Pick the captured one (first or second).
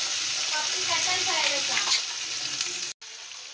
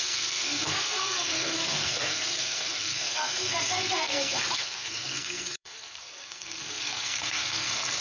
first